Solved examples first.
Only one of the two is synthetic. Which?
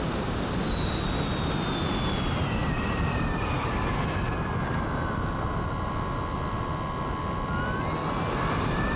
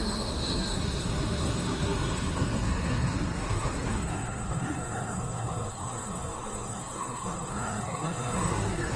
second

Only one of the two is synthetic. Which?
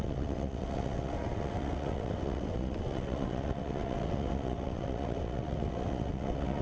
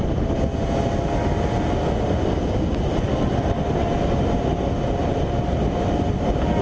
first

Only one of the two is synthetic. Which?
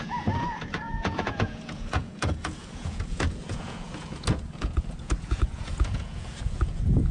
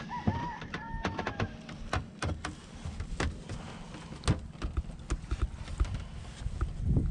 first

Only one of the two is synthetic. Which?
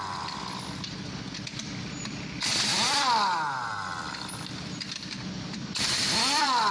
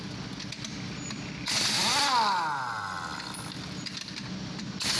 first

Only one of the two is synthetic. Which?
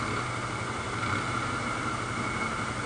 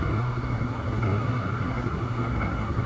second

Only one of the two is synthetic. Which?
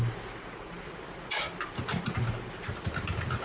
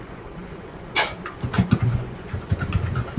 second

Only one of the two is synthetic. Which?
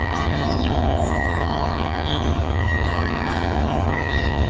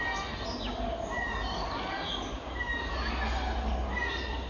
first